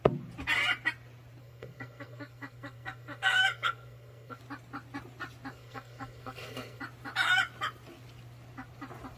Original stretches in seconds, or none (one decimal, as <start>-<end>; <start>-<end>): 0.0-1.4; 4.4-5.5; 6.8-9.2